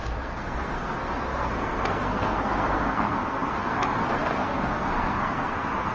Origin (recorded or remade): remade